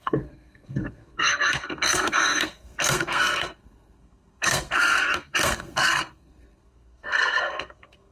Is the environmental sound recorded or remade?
remade